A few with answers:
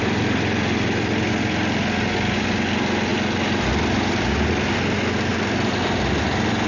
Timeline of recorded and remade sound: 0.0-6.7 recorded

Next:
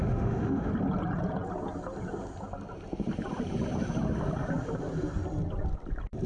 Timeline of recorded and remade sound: 0.0-0.7 remade; 0.7-6.3 recorded

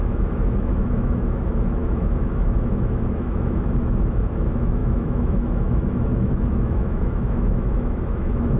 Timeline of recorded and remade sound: 0.0-8.6 remade

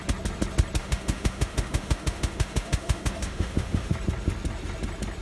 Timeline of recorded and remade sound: 0.0-0.8 recorded; 0.8-3.9 remade; 3.9-5.2 recorded